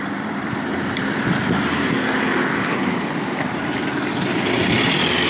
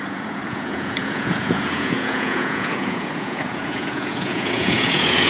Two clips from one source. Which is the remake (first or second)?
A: second